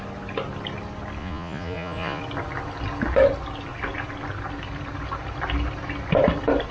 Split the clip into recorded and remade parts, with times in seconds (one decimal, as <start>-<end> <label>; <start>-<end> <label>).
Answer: 0.0-1.2 recorded; 1.2-2.2 remade; 2.2-6.7 recorded